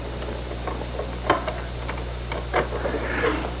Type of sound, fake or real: real